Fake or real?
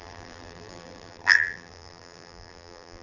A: fake